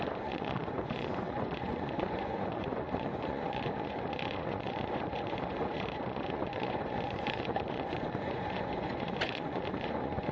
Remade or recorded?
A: remade